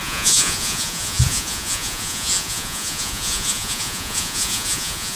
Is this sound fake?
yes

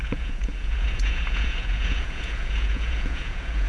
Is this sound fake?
yes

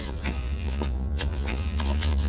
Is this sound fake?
yes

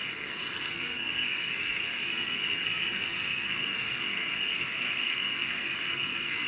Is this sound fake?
yes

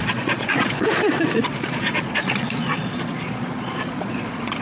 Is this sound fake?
yes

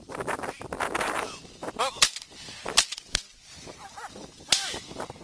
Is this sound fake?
yes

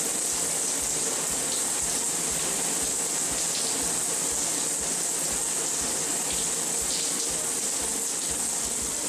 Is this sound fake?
no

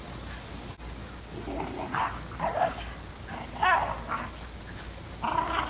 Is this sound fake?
no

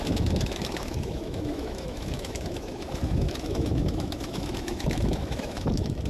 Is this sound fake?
yes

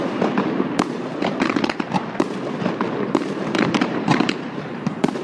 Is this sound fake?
yes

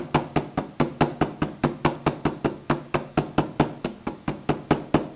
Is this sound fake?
no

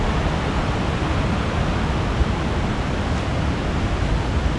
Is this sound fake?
no